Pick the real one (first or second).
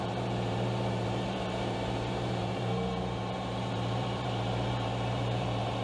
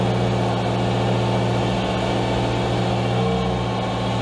second